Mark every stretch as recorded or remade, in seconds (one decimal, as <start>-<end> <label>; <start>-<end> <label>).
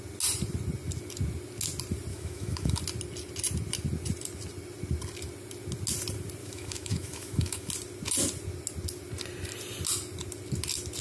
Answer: 0.0-2.1 recorded; 2.1-2.8 remade; 2.8-6.4 recorded; 6.4-7.7 remade; 7.7-11.0 recorded